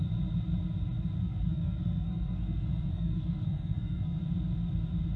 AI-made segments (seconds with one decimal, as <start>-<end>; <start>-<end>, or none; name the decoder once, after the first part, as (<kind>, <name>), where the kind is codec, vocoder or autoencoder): 1.2-4.2 (codec, SNAC)